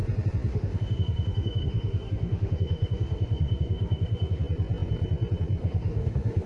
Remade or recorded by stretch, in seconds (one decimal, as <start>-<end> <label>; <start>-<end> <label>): 0.0-0.5 recorded; 0.5-4.4 remade; 4.4-5.6 recorded; 5.6-6.5 remade